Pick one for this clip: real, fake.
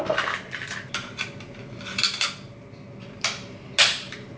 real